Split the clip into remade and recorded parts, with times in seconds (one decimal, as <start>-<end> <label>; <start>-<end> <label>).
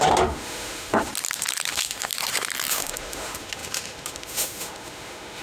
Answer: 0.0-1.1 remade; 1.1-1.7 recorded; 1.7-2.1 remade; 2.1-2.7 recorded; 2.7-5.4 remade